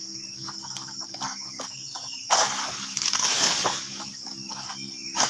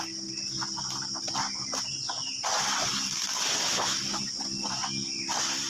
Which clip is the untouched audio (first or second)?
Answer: second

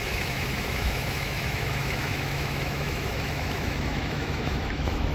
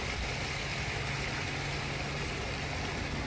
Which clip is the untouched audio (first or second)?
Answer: second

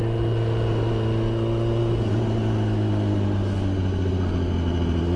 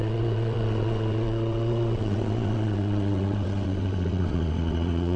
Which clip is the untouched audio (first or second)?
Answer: first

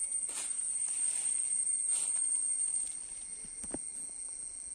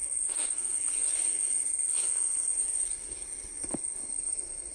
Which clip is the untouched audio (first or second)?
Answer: first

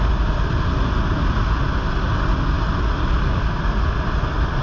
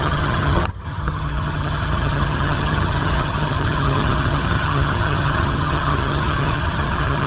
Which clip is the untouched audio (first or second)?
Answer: first